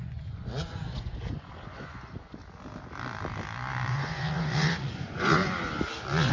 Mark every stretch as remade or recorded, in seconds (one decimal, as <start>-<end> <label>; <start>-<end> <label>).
0.0-2.4 remade; 2.4-3.9 recorded; 3.9-5.4 remade; 5.4-6.3 recorded